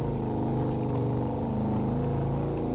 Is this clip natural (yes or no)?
yes